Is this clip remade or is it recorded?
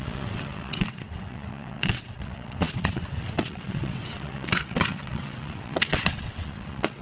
remade